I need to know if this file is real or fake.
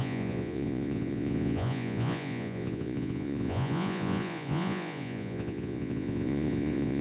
fake